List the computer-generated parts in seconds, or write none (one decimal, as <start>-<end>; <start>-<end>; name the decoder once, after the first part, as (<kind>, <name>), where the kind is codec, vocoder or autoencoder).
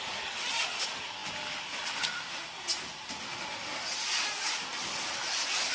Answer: none